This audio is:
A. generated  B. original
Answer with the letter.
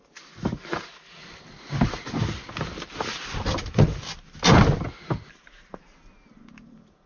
B